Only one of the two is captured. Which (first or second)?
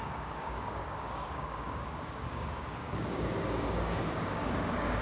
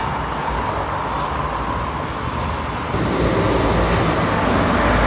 second